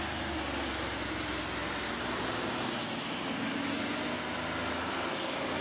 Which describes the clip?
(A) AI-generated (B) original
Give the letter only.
B